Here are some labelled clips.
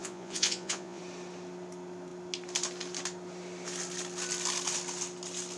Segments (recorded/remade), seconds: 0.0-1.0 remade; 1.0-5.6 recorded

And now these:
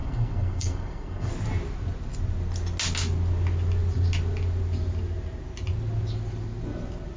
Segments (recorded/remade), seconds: 0.0-1.3 remade; 1.3-7.2 recorded

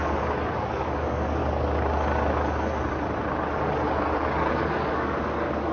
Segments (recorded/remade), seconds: 0.0-0.5 recorded; 0.5-1.4 remade; 1.4-4.5 recorded; 4.5-5.7 remade

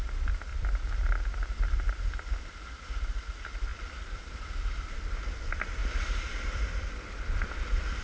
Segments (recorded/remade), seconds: 0.0-0.5 recorded; 0.5-2.0 remade; 2.0-3.7 recorded; 3.7-4.4 remade; 4.4-5.8 recorded; 5.8-8.0 remade

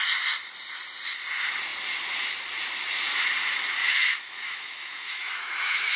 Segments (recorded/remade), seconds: 0.0-3.8 recorded; 3.8-6.0 remade

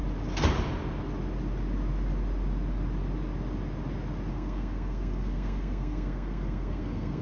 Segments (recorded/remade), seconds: 0.0-4.3 recorded; 4.3-7.2 remade